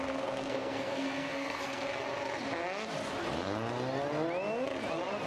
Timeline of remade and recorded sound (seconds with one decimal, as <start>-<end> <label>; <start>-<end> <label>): 0.0-1.9 remade; 1.9-5.3 recorded